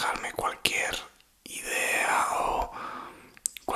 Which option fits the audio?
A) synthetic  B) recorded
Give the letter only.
B